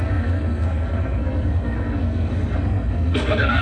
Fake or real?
fake